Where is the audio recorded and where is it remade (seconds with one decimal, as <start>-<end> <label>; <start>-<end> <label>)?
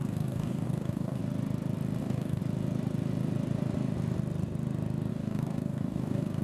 0.0-1.2 remade; 1.2-2.0 recorded; 2.0-2.4 remade; 2.4-5.1 recorded; 5.1-6.4 remade